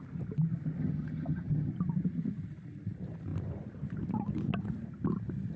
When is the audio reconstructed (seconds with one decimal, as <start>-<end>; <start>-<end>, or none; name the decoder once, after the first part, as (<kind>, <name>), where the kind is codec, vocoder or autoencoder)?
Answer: 0.8-1.7 (vocoder, HiFi-GAN)